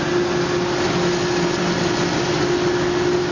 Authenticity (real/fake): real